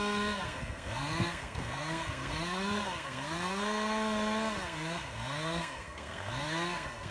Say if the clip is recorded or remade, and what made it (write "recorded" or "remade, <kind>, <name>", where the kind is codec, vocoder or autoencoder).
remade, codec, SNAC